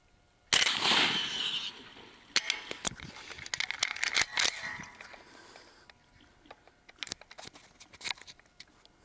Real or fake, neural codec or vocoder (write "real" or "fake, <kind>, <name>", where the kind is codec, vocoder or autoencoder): real